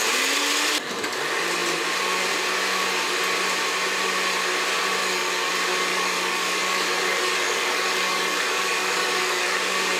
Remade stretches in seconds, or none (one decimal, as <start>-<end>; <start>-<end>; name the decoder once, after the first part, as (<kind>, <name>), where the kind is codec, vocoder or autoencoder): 5.0-5.5 (codec, DAC); 5.9-9.6